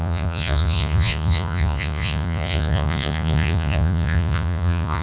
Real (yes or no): no